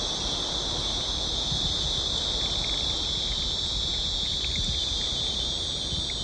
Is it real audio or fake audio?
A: real